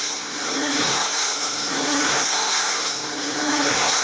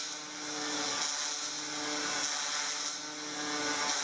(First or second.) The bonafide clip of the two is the second